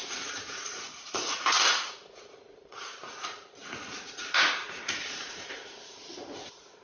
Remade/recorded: remade